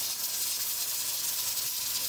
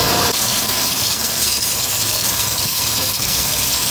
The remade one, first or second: second